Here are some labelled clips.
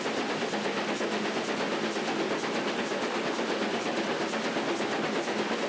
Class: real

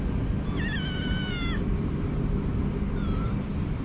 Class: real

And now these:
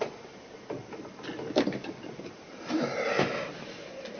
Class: real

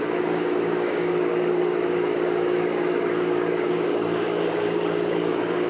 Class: fake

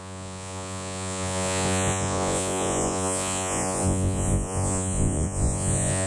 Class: fake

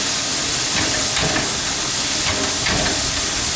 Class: real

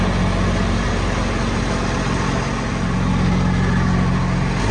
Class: real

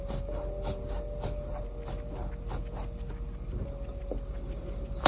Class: real